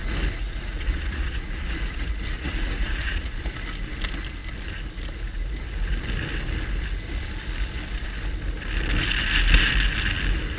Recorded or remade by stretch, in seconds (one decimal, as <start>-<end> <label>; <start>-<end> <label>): 0.0-0.4 recorded; 0.4-3.4 remade; 3.4-10.6 recorded